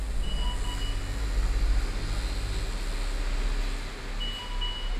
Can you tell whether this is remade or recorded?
recorded